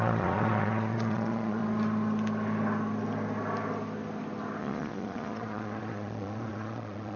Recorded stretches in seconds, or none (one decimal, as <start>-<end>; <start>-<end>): 1.6-4.6